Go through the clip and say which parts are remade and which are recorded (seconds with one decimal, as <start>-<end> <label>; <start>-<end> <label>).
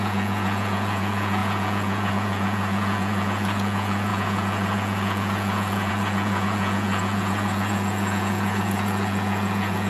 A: 0.0-9.9 remade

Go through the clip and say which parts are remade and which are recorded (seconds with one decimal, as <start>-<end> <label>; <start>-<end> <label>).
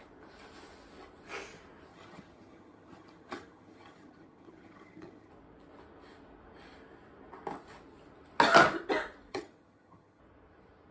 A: 0.0-1.9 recorded; 1.9-5.3 remade; 5.3-9.3 recorded; 9.3-10.2 remade; 10.2-10.9 recorded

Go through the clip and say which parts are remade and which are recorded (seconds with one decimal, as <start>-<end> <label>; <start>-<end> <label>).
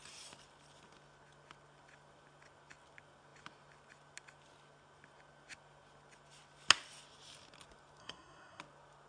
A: 0.0-8.0 recorded; 8.0-8.6 remade; 8.6-9.1 recorded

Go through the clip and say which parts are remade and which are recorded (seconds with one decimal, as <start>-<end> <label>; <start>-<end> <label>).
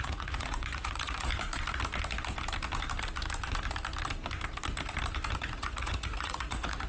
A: 0.0-1.3 remade; 1.3-5.4 recorded; 5.4-6.9 remade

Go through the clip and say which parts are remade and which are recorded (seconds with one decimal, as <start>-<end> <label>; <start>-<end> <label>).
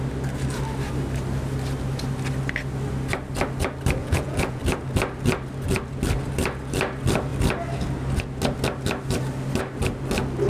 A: 0.0-4.0 recorded; 4.0-4.6 remade; 4.6-10.5 recorded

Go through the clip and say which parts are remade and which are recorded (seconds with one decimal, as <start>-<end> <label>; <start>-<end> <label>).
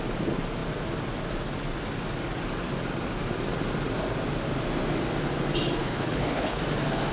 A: 0.0-5.8 recorded; 5.8-6.6 remade; 6.6-7.1 recorded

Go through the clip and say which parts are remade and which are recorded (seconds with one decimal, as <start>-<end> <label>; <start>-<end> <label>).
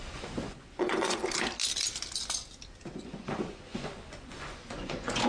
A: 0.0-1.2 remade; 1.2-2.9 recorded; 2.9-5.3 remade